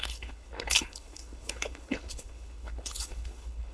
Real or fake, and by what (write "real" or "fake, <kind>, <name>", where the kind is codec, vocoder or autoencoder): fake, codec, HILCodec